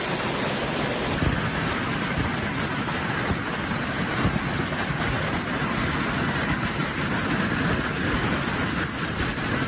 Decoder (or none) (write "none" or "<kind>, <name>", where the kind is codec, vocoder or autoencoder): none